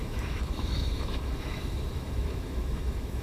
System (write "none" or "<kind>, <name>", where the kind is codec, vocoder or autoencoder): autoencoder, DAC-VAE